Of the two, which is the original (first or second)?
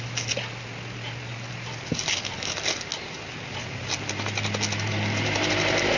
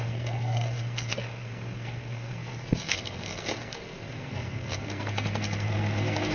first